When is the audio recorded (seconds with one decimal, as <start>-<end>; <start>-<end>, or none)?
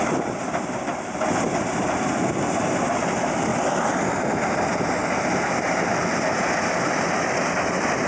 0.0-8.1